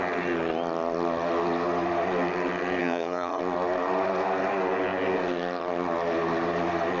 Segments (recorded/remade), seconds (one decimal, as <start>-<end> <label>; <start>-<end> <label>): 0.0-2.8 recorded; 2.8-3.4 remade; 3.4-7.0 recorded

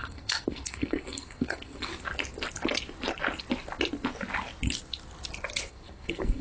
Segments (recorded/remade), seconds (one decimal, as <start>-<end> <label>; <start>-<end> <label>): 0.0-1.9 remade; 1.9-5.7 recorded; 5.7-6.4 remade

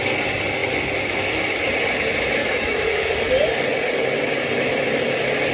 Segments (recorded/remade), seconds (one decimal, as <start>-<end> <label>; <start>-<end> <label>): 0.0-2.4 recorded; 2.4-3.1 remade; 3.1-5.5 recorded

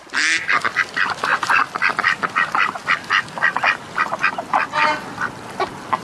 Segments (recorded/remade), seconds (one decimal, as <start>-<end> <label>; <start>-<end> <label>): 0.0-6.0 recorded

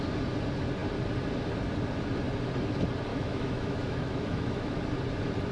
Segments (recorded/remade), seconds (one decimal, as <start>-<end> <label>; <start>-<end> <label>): 0.0-3.1 recorded; 3.1-4.8 remade; 4.8-5.5 recorded

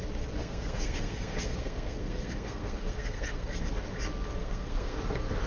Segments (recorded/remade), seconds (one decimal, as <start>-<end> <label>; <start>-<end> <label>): 0.0-0.4 recorded; 0.4-3.7 remade; 3.7-4.4 recorded; 4.4-5.0 remade; 5.0-5.5 recorded

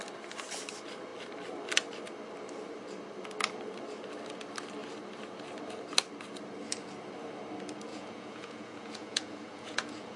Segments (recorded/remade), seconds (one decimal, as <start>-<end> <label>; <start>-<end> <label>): 0.0-7.9 recorded; 7.9-10.2 remade